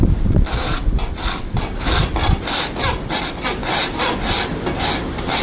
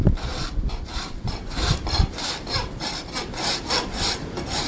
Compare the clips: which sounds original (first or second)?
first